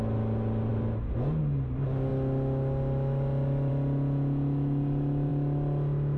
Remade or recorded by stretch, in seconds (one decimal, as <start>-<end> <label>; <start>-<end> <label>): 0.0-6.2 recorded